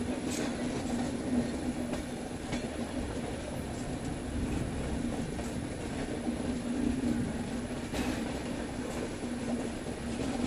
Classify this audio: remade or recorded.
recorded